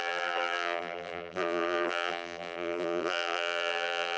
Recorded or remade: remade